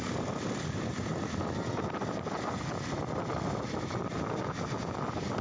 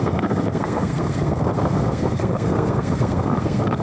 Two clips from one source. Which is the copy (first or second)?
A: second